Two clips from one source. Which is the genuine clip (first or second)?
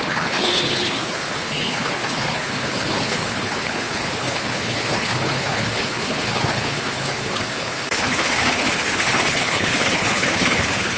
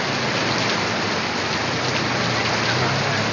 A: second